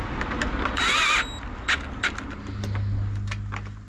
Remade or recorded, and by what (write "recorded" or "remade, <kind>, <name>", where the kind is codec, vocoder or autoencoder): recorded